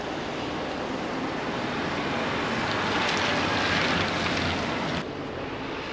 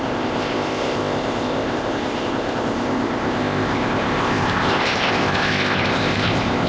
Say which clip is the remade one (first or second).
second